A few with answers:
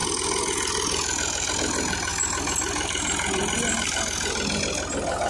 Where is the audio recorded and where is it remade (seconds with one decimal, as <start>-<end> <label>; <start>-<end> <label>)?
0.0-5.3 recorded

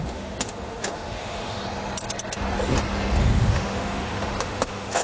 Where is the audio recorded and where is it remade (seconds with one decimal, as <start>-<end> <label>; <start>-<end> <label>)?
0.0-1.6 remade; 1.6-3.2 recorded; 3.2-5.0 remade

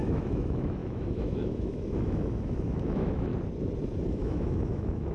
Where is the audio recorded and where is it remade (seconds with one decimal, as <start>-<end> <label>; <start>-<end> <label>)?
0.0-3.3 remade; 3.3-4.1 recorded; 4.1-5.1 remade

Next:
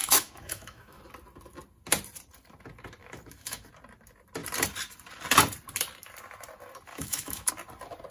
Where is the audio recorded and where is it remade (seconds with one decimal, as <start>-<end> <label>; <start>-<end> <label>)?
0.0-1.0 remade; 1.0-3.0 recorded; 3.0-3.7 remade; 3.7-6.9 recorded; 6.9-7.5 remade; 7.5-8.1 recorded

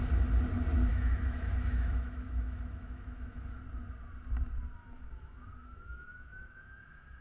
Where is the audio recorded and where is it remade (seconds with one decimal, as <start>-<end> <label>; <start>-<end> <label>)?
0.0-0.9 recorded; 0.9-3.6 remade; 3.6-4.8 recorded; 4.8-7.2 remade

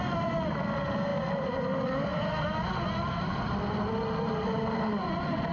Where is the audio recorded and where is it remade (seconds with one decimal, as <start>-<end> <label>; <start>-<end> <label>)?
0.0-5.5 recorded